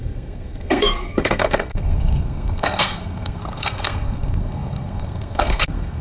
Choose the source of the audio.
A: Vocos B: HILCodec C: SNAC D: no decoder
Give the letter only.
C